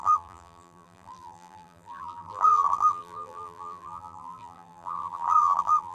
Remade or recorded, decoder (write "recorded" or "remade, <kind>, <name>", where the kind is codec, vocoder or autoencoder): remade, vocoder, BigVGAN v2